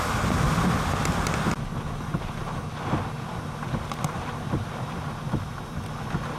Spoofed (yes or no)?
no